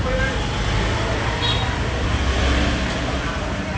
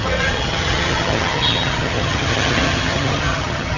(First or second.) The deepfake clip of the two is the second